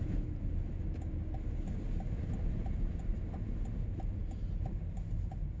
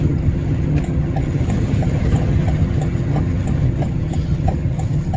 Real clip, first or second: first